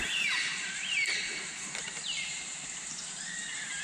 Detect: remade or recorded remade